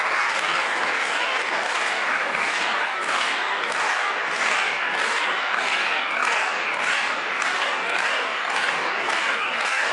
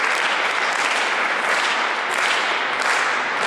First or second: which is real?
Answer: second